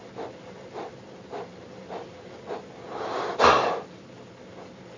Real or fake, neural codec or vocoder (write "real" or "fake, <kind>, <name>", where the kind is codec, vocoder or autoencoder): real